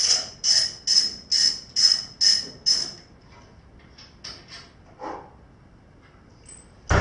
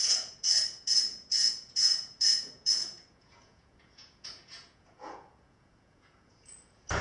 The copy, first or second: second